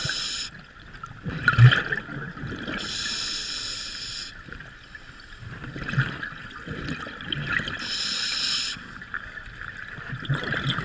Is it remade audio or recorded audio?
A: recorded